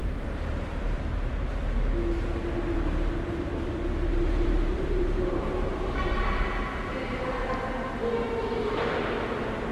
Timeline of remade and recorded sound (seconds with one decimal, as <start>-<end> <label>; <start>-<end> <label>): 0.0-1.6 remade; 1.6-4.1 recorded; 4.1-7.4 remade; 7.4-9.7 recorded

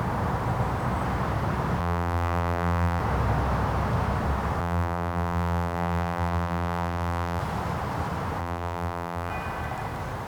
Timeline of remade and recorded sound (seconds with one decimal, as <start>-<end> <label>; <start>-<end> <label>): 0.0-1.8 recorded; 1.8-3.0 remade; 3.0-4.6 recorded; 4.6-7.4 remade; 7.4-8.4 recorded; 8.4-9.3 remade; 9.3-10.3 recorded

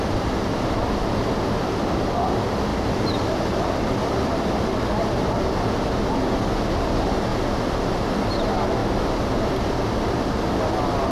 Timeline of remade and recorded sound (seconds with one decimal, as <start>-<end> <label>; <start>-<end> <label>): 0.0-7.3 remade; 7.3-8.1 recorded; 8.1-8.8 remade; 8.8-11.1 recorded

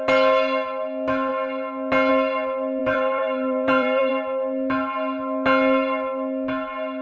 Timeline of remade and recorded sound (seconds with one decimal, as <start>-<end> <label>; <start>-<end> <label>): 0.0-2.8 recorded; 2.8-4.1 remade; 4.1-7.0 recorded

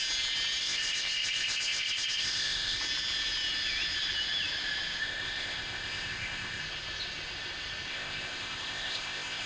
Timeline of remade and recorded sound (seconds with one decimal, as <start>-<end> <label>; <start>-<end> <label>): 0.0-0.6 recorded; 0.6-2.8 remade; 2.8-5.0 recorded; 5.0-6.6 remade; 6.6-7.9 recorded; 7.9-9.5 remade

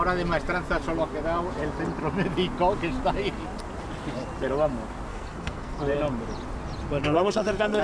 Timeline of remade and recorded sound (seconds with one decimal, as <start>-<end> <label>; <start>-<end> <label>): 0.0-5.1 recorded; 5.1-5.8 remade; 5.8-7.0 recorded; 7.0-7.8 remade

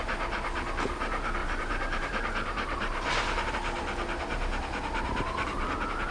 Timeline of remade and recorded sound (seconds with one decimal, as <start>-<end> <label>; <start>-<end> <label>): 0.0-1.4 recorded; 1.4-3.5 remade; 3.5-6.1 recorded

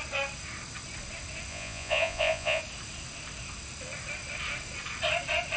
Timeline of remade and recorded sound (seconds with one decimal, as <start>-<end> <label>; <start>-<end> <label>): 0.0-1.5 recorded; 1.5-2.6 remade; 2.6-5.6 recorded